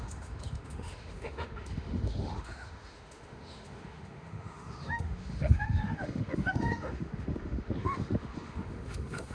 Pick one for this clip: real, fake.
fake